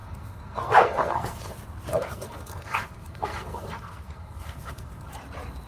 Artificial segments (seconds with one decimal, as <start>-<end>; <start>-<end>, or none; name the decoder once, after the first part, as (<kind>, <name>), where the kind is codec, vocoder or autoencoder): 0.0-1.5 (codec, SNAC); 1.9-5.1